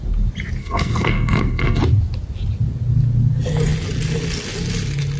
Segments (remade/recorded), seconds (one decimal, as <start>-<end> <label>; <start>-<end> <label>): 0.0-0.6 recorded; 0.6-1.8 remade; 1.8-5.2 recorded